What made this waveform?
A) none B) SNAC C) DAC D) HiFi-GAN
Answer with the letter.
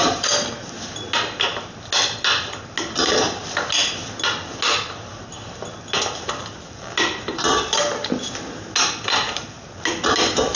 A